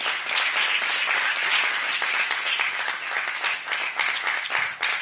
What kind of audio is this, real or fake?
real